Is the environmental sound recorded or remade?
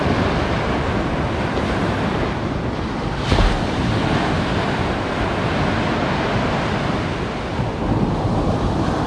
recorded